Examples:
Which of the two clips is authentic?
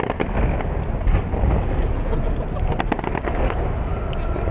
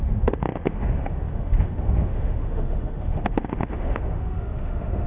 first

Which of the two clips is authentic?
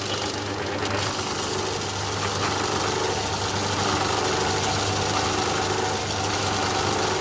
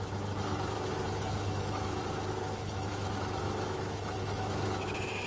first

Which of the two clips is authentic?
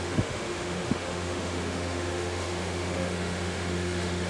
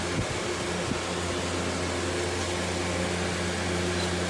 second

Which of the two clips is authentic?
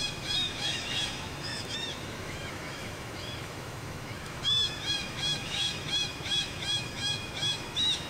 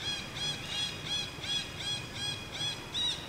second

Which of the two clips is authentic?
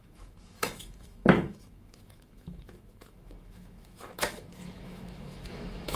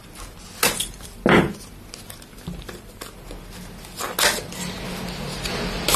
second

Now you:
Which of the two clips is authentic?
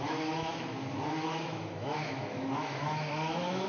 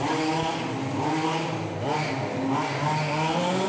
second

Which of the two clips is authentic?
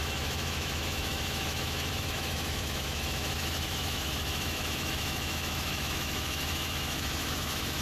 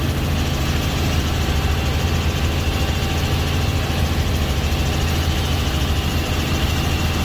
second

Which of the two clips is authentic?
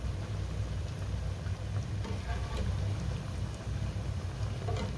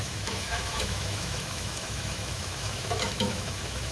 first